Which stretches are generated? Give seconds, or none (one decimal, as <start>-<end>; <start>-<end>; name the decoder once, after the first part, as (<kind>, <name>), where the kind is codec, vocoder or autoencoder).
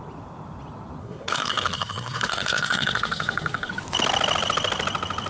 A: 1.0-3.7 (codec, SNAC)